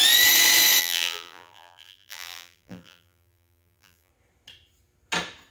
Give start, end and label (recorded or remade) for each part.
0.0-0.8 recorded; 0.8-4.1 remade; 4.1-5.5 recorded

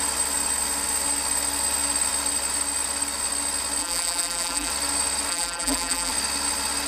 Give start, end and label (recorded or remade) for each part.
0.0-3.8 recorded; 3.8-4.7 remade; 4.7-5.3 recorded; 5.3-6.1 remade; 6.1-6.9 recorded

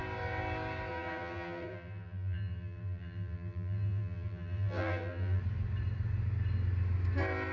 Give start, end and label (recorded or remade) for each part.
0.0-0.9 recorded; 0.9-5.4 remade; 5.4-7.5 recorded

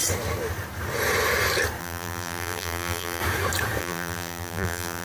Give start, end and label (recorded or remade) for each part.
0.0-1.8 recorded; 1.8-3.2 remade; 3.2-3.8 recorded; 3.8-5.0 remade